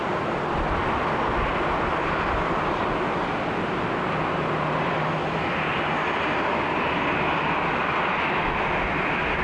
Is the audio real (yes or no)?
yes